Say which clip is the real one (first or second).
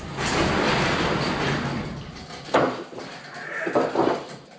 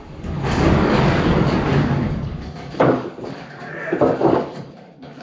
first